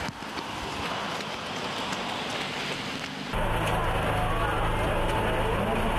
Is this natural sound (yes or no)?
yes